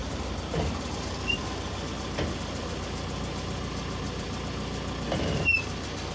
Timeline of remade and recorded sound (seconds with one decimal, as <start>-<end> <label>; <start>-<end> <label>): 0.0-6.1 remade